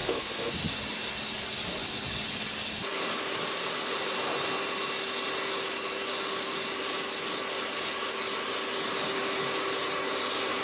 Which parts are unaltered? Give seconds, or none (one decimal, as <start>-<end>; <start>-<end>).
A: 0.5-10.6